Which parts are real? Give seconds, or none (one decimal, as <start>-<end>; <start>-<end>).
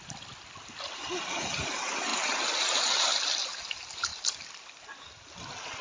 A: 0.0-5.8